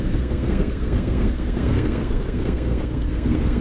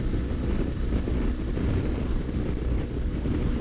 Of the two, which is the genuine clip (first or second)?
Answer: second